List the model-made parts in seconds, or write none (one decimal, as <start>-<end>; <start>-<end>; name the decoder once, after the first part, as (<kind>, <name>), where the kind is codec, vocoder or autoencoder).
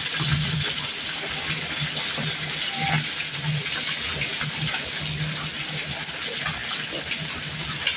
none